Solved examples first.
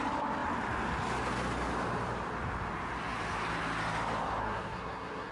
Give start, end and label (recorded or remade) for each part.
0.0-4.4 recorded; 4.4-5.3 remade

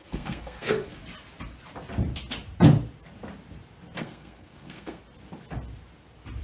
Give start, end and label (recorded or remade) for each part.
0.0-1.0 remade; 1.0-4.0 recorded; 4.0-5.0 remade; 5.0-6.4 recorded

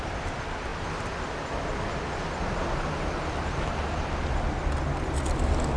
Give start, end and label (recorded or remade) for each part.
0.0-5.8 recorded

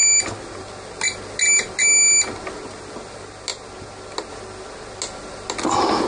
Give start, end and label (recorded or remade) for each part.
0.0-6.1 recorded

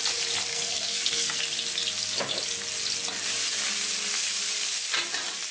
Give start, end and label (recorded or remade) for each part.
0.0-0.5 recorded; 0.5-1.4 remade; 1.4-5.5 recorded

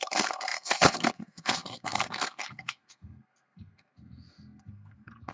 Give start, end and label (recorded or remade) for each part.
0.0-5.3 remade